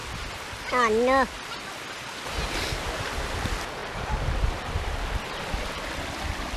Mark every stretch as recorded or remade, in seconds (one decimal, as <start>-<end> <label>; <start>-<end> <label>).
0.0-3.3 recorded; 3.3-6.6 remade